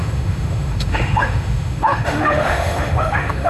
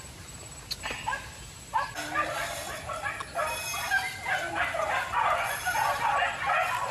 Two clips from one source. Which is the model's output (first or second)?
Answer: first